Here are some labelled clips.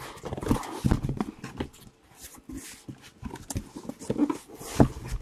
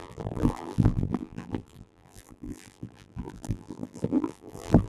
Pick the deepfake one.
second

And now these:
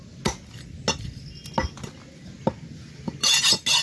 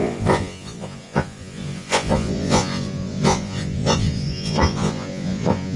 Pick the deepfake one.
second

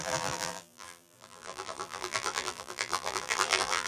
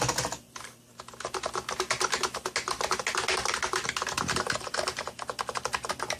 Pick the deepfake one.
first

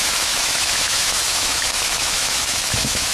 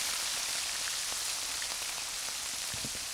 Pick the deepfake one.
first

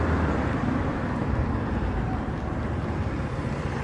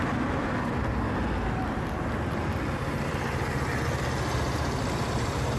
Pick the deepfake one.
first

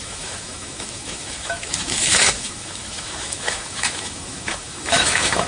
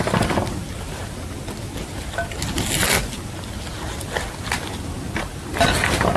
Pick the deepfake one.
first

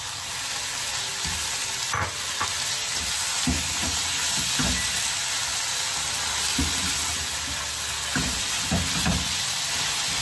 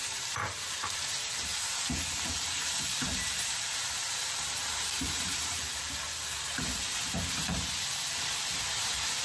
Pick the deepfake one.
second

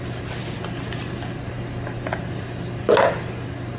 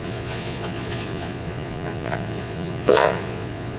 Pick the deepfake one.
second